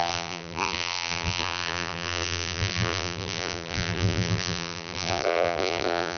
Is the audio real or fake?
fake